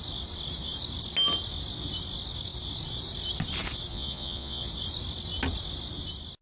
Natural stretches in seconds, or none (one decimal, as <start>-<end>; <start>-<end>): 0.0-3.9; 4.7-6.4